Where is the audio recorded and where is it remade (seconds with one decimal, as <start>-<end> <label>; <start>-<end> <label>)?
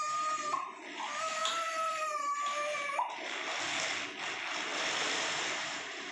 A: 0.0-1.4 recorded; 1.4-2.4 remade; 2.4-6.1 recorded